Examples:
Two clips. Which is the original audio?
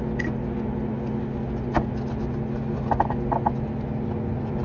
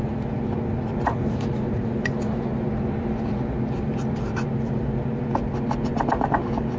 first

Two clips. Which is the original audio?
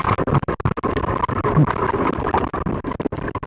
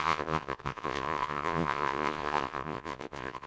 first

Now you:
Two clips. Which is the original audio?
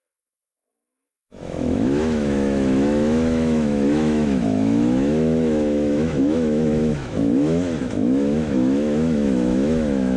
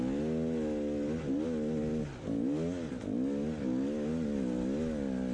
second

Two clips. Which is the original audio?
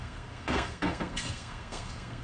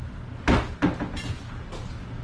second